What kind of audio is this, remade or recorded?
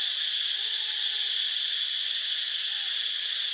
recorded